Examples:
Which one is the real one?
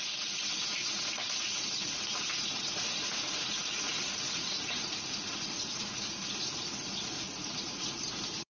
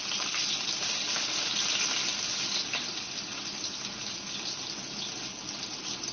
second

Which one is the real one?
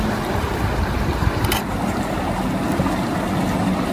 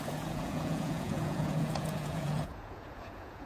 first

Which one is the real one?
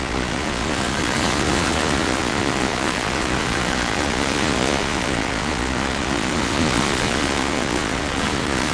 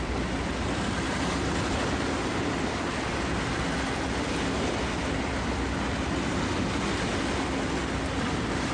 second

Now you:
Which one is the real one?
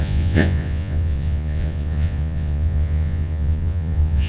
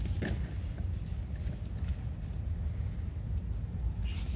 second